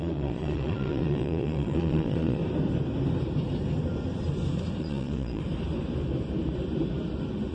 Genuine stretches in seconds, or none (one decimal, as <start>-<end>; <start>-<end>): 2.4-4.8; 5.4-7.5